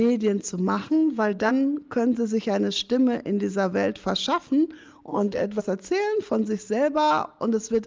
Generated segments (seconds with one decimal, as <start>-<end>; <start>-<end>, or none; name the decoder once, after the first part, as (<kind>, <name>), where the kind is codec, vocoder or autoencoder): 0.8-1.5 (codec, SNAC); 5.1-5.6